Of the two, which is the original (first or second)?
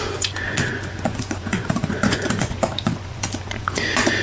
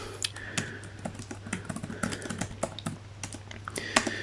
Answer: second